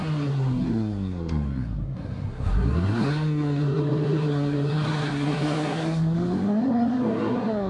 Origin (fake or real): fake